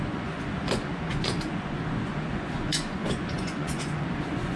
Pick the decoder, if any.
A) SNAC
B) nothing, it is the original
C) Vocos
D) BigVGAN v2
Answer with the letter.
C